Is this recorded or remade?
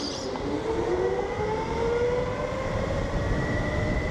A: recorded